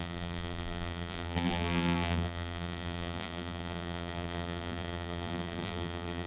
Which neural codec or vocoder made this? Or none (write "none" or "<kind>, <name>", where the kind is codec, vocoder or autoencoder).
vocoder, BigVGAN v2